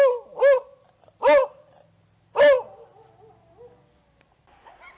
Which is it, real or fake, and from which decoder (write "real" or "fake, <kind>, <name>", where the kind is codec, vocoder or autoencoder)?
real